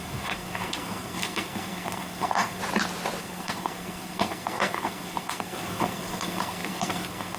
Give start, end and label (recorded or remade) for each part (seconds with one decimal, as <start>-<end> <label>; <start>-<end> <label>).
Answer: 0.0-2.6 remade; 2.6-3.2 recorded; 3.2-7.4 remade